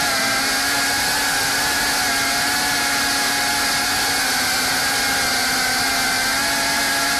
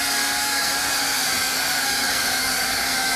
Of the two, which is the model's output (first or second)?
second